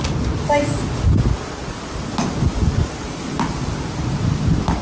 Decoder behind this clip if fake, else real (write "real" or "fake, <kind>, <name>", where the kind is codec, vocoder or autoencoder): real